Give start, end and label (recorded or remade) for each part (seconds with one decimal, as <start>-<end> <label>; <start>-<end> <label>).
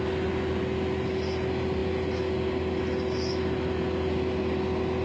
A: 0.0-5.0 recorded